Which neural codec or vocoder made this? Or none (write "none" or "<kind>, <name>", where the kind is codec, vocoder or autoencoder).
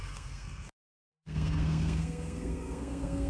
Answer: codec, SNAC